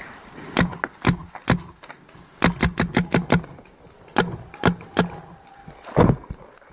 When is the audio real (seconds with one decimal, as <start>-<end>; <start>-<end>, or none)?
0.0-6.7

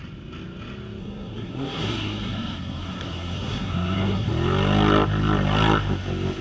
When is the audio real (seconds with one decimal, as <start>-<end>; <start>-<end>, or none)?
0.0-1.0; 4.3-6.4

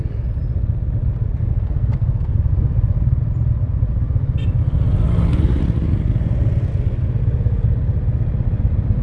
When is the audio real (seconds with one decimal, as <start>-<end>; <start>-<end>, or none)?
0.0-1.4; 2.4-9.0

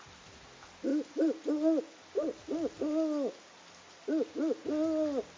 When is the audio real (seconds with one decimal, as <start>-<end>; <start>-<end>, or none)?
0.0-5.4

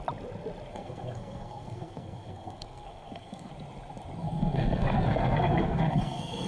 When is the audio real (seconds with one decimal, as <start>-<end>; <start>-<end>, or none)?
0.0-0.7; 3.5-4.2

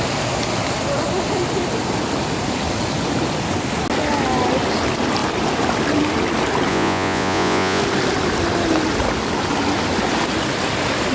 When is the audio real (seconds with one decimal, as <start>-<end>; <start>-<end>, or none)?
0.0-6.7; 7.8-11.1

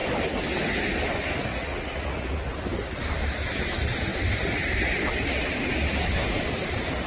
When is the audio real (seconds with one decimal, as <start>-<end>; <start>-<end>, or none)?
0.0-1.5; 2.6-7.1